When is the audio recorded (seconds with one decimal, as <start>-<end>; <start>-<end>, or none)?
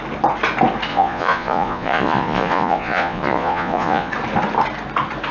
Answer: 0.0-0.9; 4.1-5.3